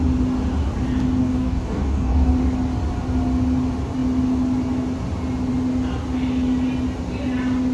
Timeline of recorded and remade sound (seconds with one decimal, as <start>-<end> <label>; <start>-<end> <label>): 0.0-1.2 recorded; 1.2-2.3 remade; 2.3-7.7 recorded